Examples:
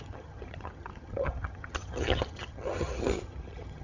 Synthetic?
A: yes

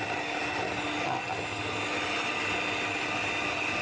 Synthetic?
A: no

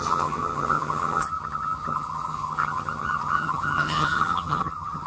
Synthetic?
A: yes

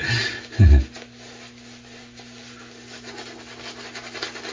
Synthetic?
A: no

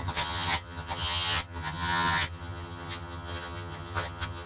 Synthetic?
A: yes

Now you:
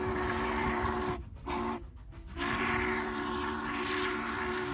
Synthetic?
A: no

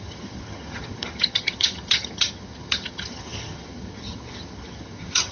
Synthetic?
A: yes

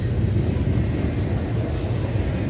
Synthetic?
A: no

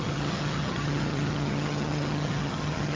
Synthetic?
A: yes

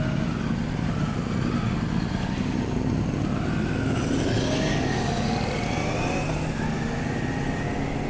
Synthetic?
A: no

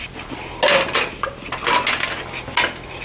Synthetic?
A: no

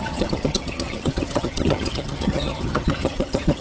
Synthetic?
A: yes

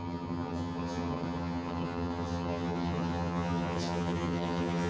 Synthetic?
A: yes